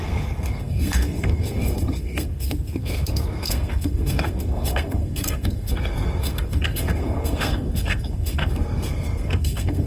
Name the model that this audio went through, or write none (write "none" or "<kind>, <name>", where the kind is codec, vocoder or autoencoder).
codec, SNAC